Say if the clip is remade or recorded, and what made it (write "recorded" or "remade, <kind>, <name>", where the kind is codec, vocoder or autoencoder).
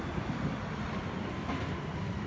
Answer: recorded